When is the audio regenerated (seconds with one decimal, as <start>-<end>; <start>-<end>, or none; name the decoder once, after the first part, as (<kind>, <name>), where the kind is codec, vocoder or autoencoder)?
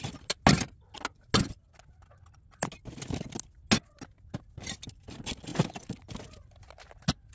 none